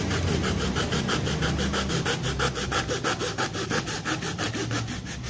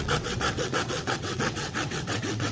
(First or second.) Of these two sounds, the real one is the first